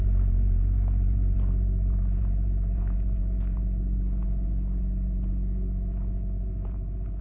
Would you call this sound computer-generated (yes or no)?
yes